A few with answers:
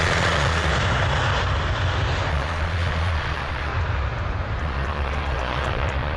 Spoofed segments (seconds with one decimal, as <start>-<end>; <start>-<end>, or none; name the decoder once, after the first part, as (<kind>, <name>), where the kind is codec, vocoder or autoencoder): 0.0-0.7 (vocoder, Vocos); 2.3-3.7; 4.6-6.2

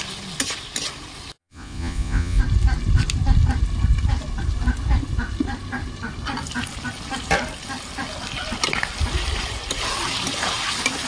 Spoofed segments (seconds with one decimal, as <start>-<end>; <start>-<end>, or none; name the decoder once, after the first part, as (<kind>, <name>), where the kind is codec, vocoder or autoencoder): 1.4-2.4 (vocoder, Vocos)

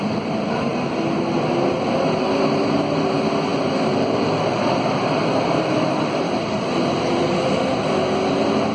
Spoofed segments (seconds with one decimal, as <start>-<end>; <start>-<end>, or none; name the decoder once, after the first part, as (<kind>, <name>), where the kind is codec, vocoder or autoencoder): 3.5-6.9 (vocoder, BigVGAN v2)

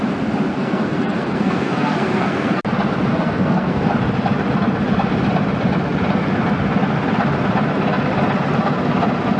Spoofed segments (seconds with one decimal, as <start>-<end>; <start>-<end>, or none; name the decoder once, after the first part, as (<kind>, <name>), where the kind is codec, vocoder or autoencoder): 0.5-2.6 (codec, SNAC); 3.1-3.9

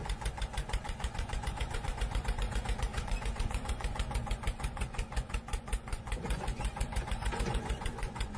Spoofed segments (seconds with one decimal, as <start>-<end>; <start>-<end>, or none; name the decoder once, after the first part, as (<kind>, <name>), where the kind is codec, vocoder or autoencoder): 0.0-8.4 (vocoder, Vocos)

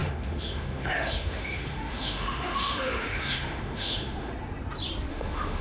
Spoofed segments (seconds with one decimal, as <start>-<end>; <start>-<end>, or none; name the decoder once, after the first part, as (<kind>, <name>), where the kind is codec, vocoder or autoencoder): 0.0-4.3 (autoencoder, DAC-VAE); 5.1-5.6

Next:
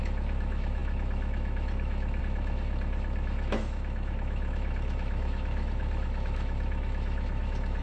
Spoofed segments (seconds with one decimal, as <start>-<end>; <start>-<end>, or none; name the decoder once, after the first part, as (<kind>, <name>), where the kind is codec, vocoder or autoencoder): 0.0-7.8 (autoencoder, DAC-VAE)